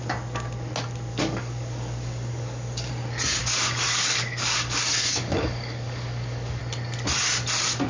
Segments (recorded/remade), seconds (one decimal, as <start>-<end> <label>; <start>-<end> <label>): 0.0-1.1 recorded; 1.1-2.9 remade; 2.9-3.4 recorded; 3.4-6.6 remade; 6.6-7.9 recorded